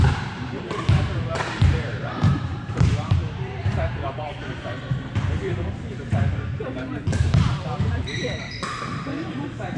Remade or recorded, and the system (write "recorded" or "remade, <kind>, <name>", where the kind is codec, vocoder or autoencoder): remade, vocoder, BigVGAN v2